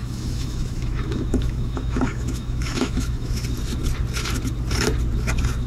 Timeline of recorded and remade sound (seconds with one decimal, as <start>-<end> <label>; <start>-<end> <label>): 0.0-3.4 remade; 3.4-5.7 recorded